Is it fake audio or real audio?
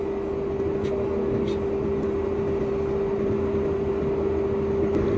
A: real